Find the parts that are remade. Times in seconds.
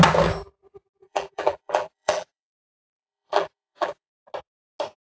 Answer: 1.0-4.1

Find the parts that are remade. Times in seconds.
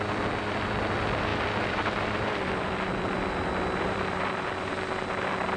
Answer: 1.3-4.7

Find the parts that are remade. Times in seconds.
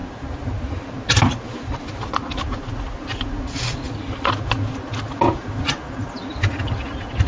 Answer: none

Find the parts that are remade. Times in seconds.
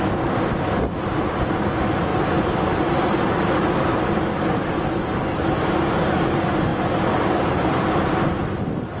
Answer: 6.7-7.7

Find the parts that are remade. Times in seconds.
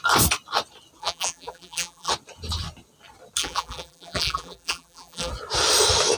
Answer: 1.0-2.1; 3.4-5.3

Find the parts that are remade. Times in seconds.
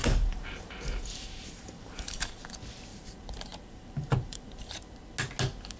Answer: 0.0-2.4; 2.9-4.8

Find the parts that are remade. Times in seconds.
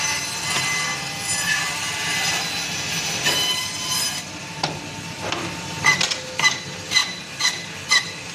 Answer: 7.0-7.7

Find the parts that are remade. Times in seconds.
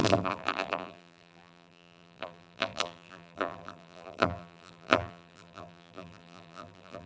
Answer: 0.0-7.1